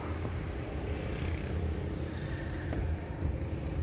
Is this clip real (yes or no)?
yes